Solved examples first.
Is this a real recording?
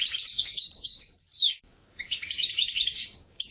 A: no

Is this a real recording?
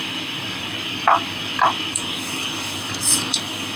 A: no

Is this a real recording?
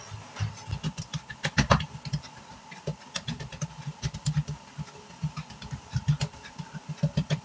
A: yes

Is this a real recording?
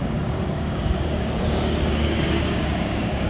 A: no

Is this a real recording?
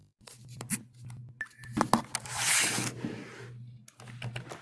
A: yes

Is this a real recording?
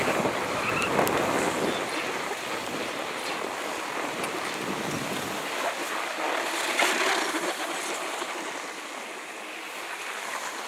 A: yes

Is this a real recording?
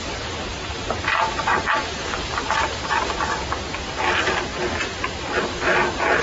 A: yes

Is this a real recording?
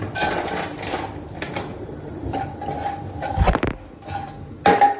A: yes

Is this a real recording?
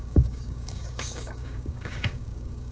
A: no